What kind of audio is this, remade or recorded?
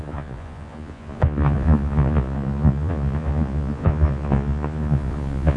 remade